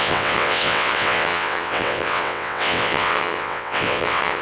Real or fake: fake